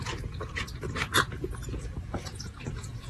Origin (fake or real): fake